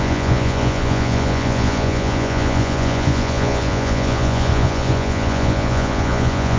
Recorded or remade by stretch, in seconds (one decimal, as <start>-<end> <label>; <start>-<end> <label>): 0.0-6.6 remade